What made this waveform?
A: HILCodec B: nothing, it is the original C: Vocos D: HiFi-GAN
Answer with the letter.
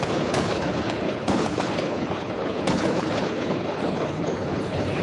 A